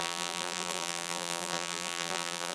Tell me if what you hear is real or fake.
fake